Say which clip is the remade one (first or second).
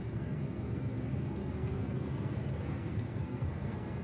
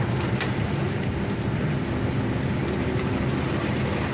first